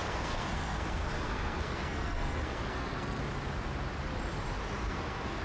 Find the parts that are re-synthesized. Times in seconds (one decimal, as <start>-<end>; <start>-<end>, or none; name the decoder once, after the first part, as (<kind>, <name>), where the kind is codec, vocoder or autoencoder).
0.0-3.2 (codec, SNAC); 4.8-5.4